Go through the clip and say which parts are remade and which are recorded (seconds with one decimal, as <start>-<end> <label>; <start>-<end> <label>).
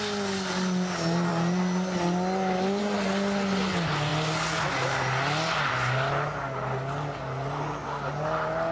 0.0-8.7 recorded